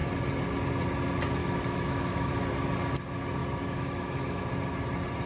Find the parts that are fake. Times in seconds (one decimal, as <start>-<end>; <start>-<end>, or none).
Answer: 1.4-2.4; 3.4-4.4